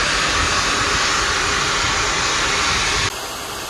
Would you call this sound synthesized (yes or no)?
no